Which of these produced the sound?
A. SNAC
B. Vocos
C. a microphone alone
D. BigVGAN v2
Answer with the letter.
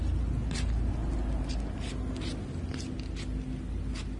C